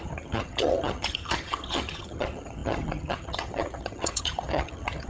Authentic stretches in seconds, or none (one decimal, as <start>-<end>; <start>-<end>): none